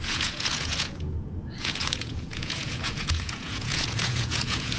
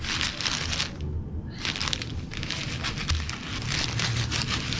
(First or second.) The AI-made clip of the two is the first